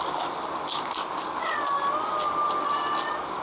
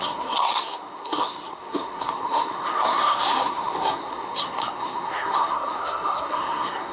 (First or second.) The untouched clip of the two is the first